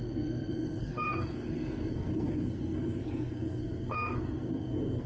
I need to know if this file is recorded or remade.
remade